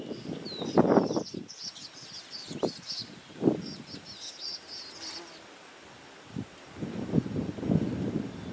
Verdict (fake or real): real